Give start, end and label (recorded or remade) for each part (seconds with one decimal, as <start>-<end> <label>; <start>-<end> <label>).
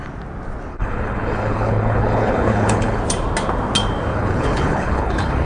0.0-0.7 recorded; 0.7-3.0 remade; 3.0-4.1 recorded; 4.1-5.5 remade